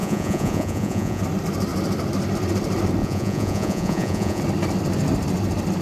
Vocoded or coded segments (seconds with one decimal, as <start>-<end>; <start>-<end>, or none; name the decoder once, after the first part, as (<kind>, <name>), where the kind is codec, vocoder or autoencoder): 0.0-1.2 (vocoder, Vocos); 3.0-4.4